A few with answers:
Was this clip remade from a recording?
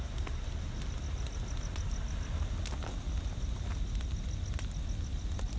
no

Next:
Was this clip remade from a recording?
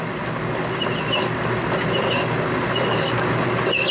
no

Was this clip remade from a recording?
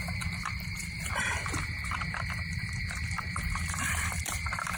yes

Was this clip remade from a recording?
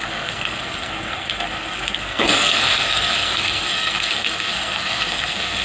yes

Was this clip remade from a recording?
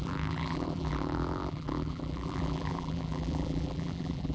yes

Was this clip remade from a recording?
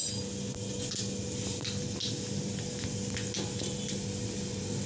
no